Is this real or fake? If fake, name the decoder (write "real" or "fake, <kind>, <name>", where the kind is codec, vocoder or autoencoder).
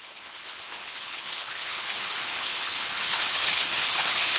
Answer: fake, codec, HILCodec